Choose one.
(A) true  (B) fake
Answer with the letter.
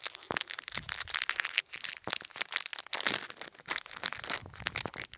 A